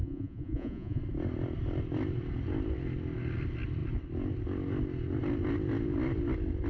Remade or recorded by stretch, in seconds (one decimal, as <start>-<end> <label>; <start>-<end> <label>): 0.0-1.0 remade; 1.0-6.7 recorded